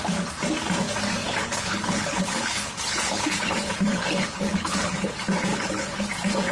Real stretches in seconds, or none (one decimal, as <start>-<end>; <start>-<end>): 0.0-1.2; 5.1-5.5; 6.0-6.5

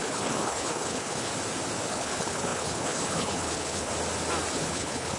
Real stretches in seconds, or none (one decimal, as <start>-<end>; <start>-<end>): 1.3-1.9; 3.9-4.5